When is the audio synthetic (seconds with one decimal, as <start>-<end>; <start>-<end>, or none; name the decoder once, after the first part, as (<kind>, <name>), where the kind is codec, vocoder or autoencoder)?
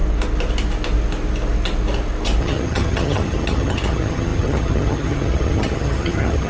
2.4-6.5 (vocoder, HiFi-GAN)